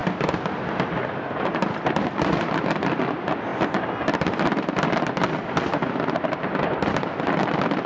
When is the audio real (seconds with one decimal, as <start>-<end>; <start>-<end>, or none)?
0.0-7.9